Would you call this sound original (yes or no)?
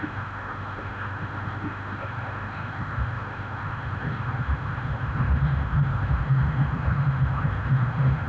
no